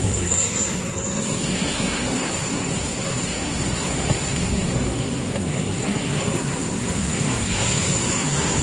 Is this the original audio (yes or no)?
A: no